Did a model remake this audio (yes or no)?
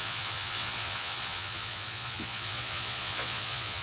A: yes